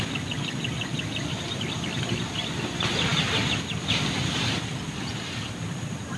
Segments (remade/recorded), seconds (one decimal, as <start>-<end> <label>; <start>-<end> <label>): 0.0-6.2 recorded

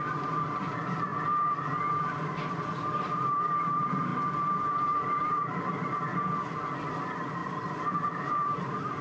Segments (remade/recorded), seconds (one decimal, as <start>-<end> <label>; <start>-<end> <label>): 0.0-1.1 remade; 1.1-2.9 recorded; 2.9-4.1 remade; 4.1-4.6 recorded; 4.6-6.1 remade; 6.1-6.8 recorded; 6.8-9.0 remade

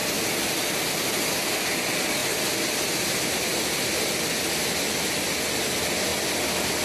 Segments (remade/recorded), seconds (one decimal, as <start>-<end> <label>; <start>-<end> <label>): 0.0-6.8 recorded

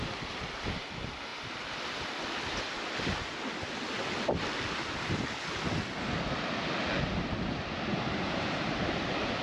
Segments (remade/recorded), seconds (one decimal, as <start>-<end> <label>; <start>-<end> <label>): 0.0-7.9 recorded; 7.9-8.8 remade; 8.8-9.4 recorded

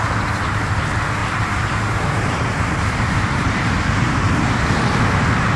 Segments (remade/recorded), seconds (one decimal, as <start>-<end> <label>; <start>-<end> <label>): 0.0-1.2 recorded; 1.2-4.3 remade; 4.3-5.6 recorded

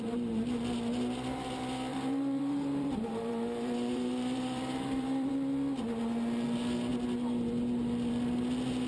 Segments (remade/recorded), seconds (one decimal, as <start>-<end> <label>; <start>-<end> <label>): 0.0-1.9 recorded; 1.9-5.3 remade; 5.3-8.9 recorded